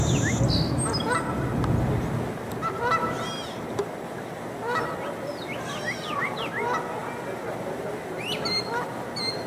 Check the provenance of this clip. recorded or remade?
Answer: recorded